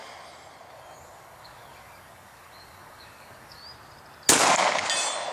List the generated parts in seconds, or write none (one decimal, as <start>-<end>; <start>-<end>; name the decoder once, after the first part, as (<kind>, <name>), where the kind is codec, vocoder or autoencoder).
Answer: 0.7-3.6 (codec, DAC)